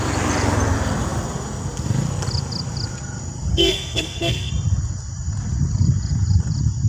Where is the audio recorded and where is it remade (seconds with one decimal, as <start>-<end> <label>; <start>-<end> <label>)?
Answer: 0.0-3.5 recorded; 3.5-4.5 remade; 4.5-6.9 recorded

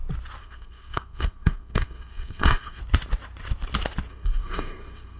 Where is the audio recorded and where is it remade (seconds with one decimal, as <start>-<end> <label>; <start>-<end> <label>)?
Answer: 0.0-0.4 recorded; 0.4-2.8 remade; 2.8-4.1 recorded; 4.1-5.2 remade

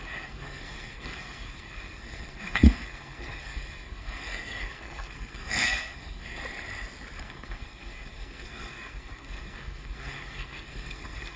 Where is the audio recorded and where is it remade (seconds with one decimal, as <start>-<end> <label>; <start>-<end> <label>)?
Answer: 0.0-6.4 remade; 6.4-7.2 recorded; 7.2-11.4 remade

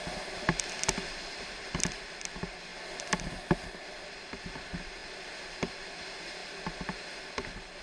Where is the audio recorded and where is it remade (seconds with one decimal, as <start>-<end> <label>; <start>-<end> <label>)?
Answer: 0.0-7.8 recorded